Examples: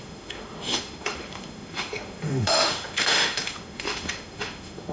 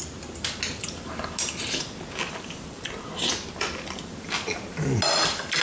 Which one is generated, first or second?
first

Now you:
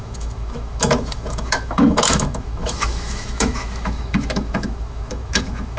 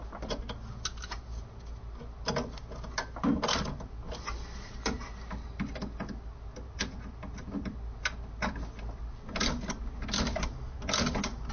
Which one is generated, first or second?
first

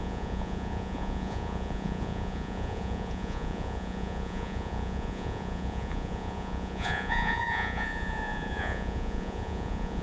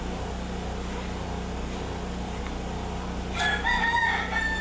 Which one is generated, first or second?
first